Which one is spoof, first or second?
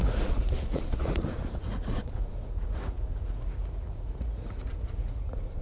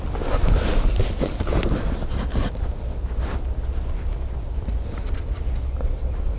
first